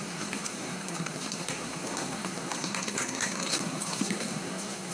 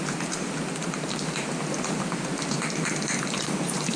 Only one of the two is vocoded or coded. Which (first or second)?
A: first